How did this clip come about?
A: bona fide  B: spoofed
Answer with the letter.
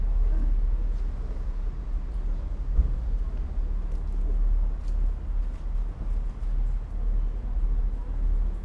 A